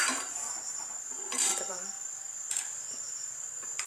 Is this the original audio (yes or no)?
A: no